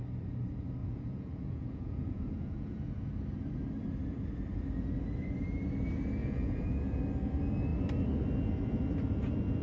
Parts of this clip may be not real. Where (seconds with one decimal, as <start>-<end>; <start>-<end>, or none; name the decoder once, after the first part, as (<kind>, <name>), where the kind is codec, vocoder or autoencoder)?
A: 0.8-3.1 (vocoder, Vocos); 6.2-7.0